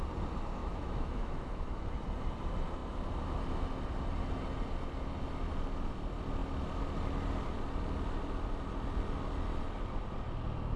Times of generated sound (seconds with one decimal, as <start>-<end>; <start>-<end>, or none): 0.6-1.8